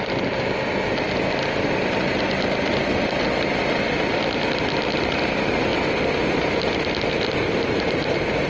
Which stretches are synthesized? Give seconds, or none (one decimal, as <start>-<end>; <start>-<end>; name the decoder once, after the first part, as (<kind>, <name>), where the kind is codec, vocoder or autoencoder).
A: none